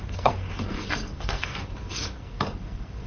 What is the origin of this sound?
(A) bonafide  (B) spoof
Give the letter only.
B